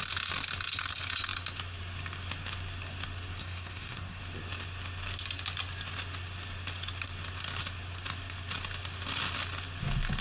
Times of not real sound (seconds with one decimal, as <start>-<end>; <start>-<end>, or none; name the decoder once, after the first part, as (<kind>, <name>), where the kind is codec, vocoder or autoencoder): 3.4-4.2 (codec, SNAC)